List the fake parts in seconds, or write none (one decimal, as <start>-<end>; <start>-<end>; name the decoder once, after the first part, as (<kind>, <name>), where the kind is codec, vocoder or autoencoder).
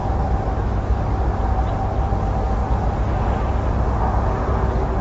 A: 0.0-1.0 (autoencoder, DAC-VAE)